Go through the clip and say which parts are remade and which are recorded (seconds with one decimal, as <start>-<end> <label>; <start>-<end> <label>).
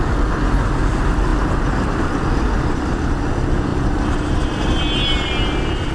0.0-5.9 recorded